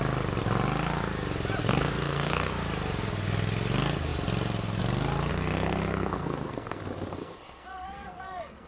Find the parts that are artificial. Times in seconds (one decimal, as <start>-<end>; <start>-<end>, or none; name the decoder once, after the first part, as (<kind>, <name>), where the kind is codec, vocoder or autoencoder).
1.6-2.5 (codec, SNAC); 5.3-6.8; 7.2-8.7